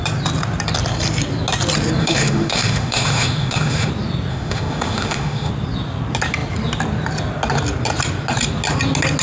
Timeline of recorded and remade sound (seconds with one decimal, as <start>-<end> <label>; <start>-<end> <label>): 0.0-2.0 recorded; 2.0-3.9 remade; 3.9-4.3 recorded; 4.3-5.5 remade; 5.5-9.2 recorded